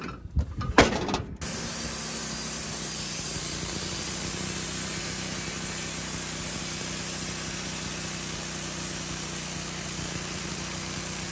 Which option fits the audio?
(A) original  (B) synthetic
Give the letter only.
A